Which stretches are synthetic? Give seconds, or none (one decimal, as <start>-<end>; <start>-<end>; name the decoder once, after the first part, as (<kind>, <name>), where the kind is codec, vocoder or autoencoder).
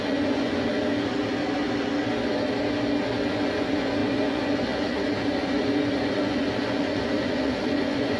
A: 0.0-0.7 (vocoder, Vocos); 3.3-8.2